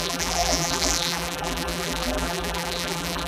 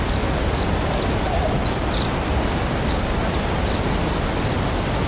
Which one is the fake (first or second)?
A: first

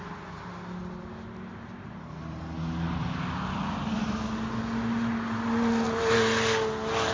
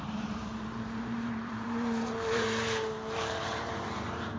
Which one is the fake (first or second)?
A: second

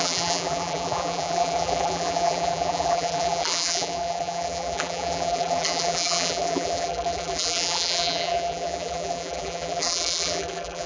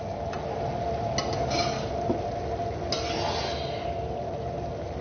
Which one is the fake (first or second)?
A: first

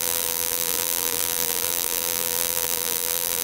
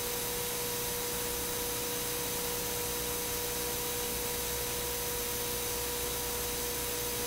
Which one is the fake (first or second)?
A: first